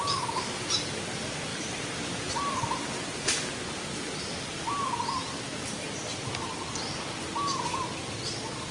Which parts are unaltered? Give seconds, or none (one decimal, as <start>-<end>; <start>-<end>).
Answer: 0.0-8.7